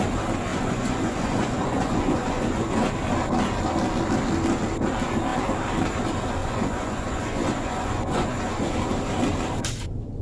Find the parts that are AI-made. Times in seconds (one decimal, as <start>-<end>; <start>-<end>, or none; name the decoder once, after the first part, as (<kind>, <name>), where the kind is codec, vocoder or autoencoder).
0.5-2.9 (vocoder, Vocos); 6.4-8.7